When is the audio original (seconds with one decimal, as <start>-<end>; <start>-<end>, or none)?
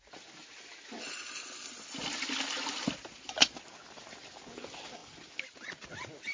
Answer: 0.0-6.3